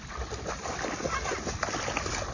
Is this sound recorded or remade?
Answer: recorded